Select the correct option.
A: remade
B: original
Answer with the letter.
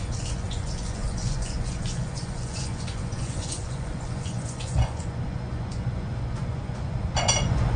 A